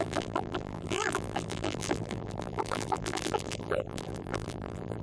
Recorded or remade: remade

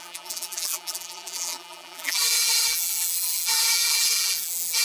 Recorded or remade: remade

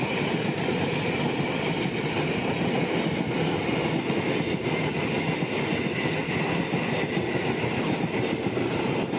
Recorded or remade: recorded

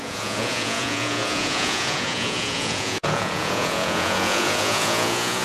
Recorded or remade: remade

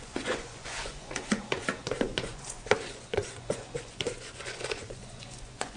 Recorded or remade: remade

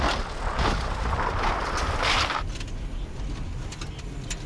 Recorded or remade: recorded